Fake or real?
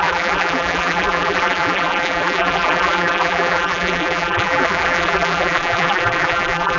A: fake